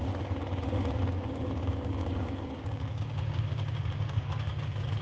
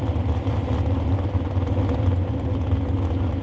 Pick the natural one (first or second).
second